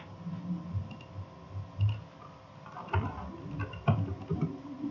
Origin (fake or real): real